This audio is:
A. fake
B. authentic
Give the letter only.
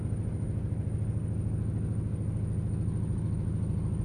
B